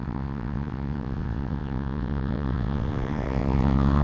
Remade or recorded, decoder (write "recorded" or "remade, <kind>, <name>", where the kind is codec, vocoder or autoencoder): remade, vocoder, WaveNeXt